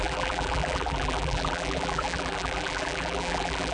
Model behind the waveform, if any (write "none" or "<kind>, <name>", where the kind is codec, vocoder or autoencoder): vocoder, BigVGAN v2